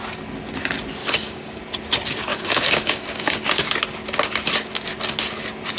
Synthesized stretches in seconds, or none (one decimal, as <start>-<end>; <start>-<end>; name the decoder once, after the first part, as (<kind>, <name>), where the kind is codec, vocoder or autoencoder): 1.0-1.6 (codec, DAC); 2.3-3.7